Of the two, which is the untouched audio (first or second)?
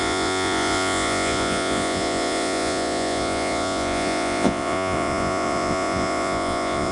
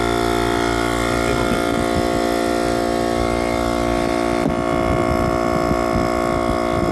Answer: second